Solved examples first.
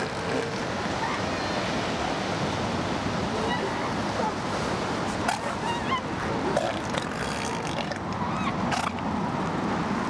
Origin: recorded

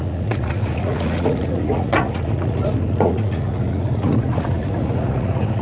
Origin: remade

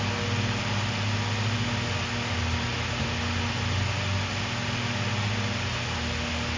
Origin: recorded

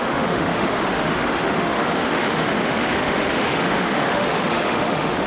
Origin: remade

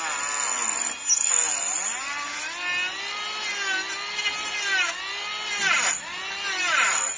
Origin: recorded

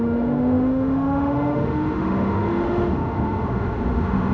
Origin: remade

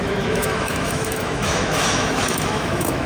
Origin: remade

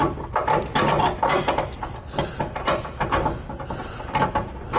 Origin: recorded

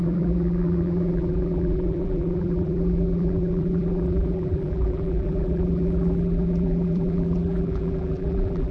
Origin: remade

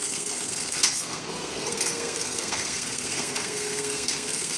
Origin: remade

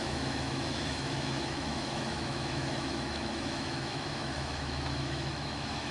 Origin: remade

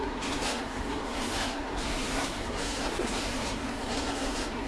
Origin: remade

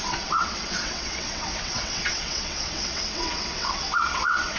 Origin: remade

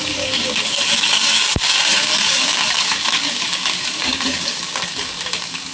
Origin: remade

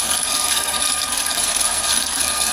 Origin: remade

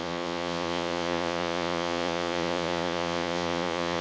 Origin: remade